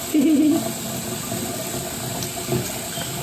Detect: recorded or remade recorded